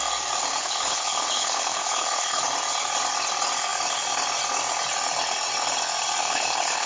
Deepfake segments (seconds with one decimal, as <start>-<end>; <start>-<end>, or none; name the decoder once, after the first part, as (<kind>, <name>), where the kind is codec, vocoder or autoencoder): 0.5-2.4 (codec, HILCodec); 6.2-6.9